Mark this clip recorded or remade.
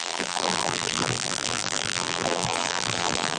remade